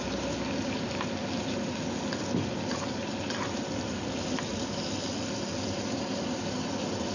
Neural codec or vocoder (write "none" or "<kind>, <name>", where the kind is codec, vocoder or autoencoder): none